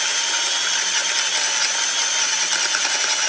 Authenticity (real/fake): real